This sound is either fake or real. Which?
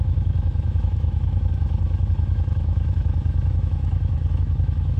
fake